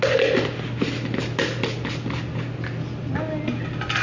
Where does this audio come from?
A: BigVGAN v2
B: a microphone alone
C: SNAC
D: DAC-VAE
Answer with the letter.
B